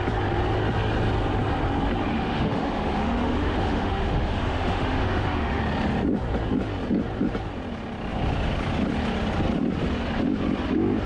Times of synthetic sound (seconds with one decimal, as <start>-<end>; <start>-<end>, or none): 2.1-5.6